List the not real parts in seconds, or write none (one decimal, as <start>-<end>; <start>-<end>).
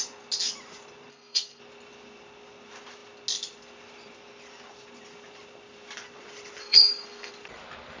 1.1-1.6; 6.6-7.3